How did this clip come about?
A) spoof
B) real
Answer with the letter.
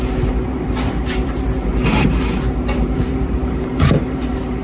A